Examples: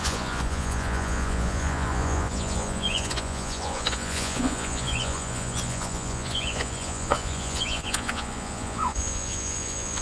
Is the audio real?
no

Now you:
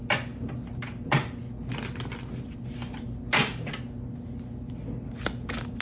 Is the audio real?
yes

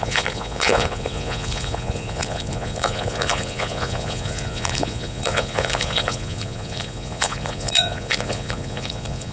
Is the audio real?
no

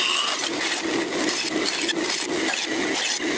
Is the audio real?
yes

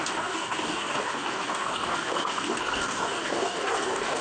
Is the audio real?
no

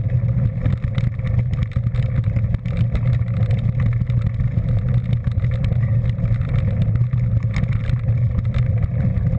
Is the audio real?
yes